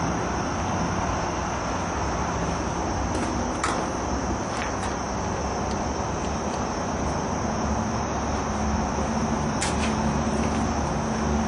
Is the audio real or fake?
real